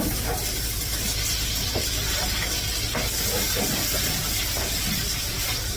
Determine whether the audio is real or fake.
real